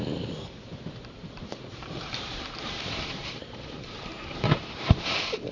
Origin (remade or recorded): remade